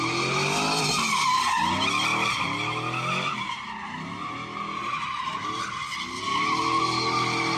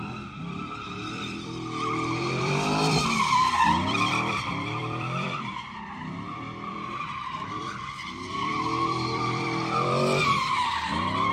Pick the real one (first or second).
first